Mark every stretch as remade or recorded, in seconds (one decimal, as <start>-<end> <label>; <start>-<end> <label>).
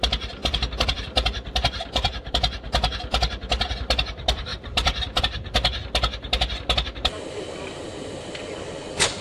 0.0-0.4 recorded; 0.4-2.3 remade; 2.3-4.5 recorded; 4.5-5.2 remade; 5.2-9.2 recorded